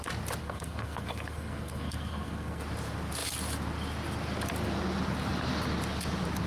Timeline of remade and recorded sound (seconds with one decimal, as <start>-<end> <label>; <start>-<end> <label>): 0.0-0.4 recorded; 0.4-2.6 remade; 2.6-6.5 recorded

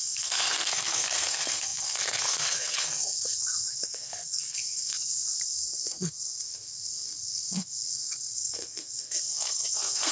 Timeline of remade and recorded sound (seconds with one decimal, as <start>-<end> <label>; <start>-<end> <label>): 0.0-10.1 remade

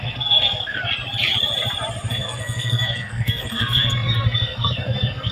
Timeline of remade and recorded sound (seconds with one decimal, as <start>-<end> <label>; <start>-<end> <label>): 0.0-0.8 remade; 0.8-2.1 recorded; 2.1-5.3 remade

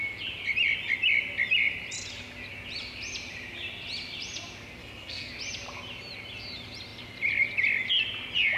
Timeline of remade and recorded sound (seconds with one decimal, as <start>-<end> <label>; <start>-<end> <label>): 0.0-4.8 recorded; 4.8-5.3 remade; 5.3-8.6 recorded